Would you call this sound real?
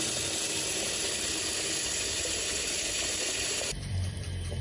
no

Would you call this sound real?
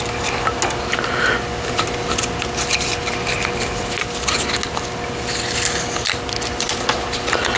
yes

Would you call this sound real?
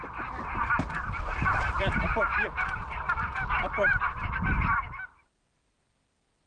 yes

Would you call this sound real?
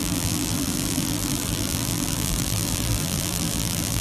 no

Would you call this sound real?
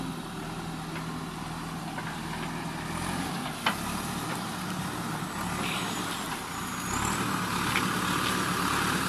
yes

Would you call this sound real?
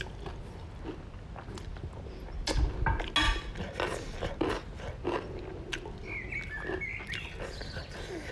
yes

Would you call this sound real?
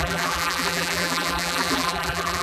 no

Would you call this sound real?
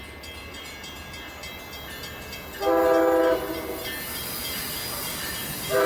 yes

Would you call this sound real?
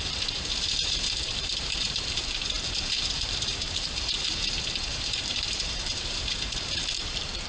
no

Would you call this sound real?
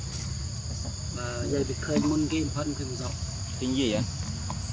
yes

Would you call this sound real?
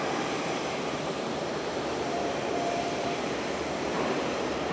no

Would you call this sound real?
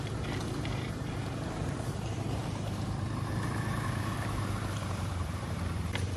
no